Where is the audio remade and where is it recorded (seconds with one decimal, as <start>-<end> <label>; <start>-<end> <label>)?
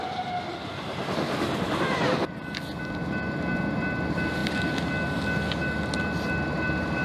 0.0-7.0 recorded